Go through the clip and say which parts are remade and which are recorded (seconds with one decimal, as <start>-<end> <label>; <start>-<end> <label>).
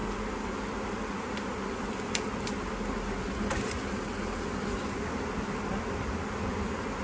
0.0-7.0 recorded